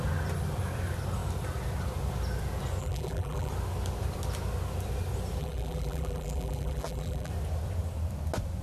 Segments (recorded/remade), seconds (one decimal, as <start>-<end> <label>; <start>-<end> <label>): 0.0-2.8 recorded; 2.8-3.5 remade; 3.5-5.4 recorded; 5.4-7.3 remade; 7.3-8.6 recorded